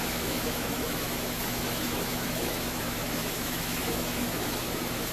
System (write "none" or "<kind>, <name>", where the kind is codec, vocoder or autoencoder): autoencoder, DAC-VAE